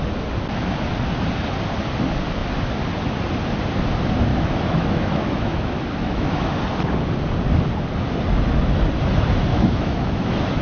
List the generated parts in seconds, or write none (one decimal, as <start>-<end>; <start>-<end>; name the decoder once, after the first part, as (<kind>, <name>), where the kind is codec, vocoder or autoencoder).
4.3-6.6 (autoencoder, DAC-VAE); 9.5-10.6

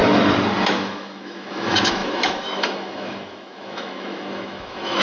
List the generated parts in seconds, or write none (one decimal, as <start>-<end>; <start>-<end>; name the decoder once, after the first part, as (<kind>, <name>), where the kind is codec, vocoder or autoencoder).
0.7-5.0 (autoencoder, DAC-VAE)

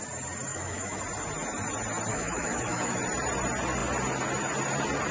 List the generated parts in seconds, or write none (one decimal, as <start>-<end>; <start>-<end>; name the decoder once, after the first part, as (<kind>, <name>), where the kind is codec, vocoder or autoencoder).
0.5-1.0 (autoencoder, DAC-VAE); 2.1-3.0

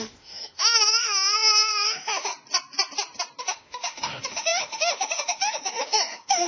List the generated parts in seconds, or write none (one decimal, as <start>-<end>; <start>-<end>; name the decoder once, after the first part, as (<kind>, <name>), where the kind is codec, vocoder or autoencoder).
0.0-2.3 (autoencoder, DAC-VAE); 3.4-6.5

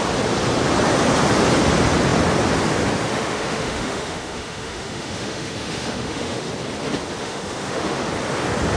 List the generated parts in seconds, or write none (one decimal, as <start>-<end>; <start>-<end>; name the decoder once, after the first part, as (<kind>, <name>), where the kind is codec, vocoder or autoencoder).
3.1-6.5 (autoencoder, DAC-VAE); 7.2-8.1

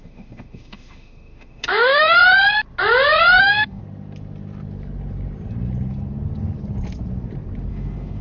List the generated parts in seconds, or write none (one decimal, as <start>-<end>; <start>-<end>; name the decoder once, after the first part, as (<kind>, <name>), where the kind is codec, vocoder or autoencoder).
0.0-2.2 (autoencoder, DAC-VAE); 3.4-3.8; 7.7-8.2

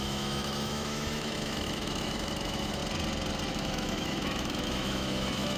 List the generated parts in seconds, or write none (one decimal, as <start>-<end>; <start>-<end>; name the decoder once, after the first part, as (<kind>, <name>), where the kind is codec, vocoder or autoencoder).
0.0-2.8 (autoencoder, DAC-VAE); 3.5-5.6

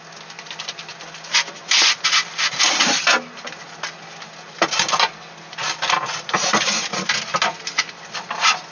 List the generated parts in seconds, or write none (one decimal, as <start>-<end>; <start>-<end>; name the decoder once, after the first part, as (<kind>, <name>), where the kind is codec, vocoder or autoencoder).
none